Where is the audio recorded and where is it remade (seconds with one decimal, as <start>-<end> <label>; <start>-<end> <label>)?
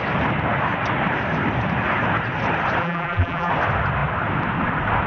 0.0-2.8 recorded; 2.8-3.5 remade; 3.5-5.1 recorded